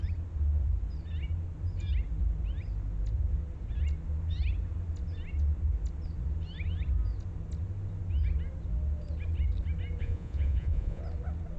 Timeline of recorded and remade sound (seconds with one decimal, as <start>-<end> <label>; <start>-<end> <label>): 0.0-10.0 recorded; 10.0-11.0 remade; 11.0-11.6 recorded